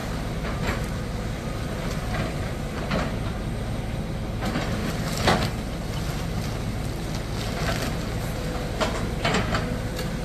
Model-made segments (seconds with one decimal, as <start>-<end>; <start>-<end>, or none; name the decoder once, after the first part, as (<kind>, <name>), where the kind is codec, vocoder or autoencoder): 0.0-3.4 (vocoder, BigVGAN v2)